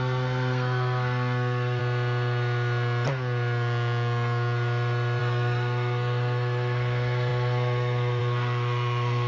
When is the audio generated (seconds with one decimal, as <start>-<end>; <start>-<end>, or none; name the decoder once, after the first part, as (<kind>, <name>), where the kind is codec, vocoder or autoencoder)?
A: 0.0-1.8 (codec, SNAC); 5.2-9.3